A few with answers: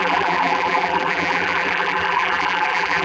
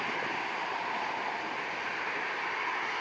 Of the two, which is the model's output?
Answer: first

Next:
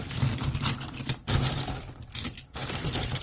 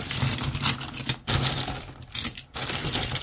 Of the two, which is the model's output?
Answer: first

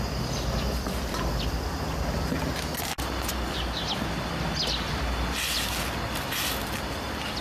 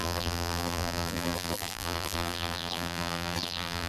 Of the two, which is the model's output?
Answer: second